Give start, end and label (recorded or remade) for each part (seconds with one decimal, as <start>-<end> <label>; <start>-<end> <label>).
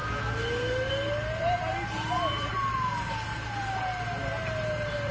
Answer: 0.0-0.9 remade; 0.9-5.1 recorded